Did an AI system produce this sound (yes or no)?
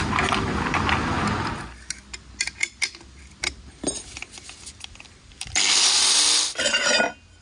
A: no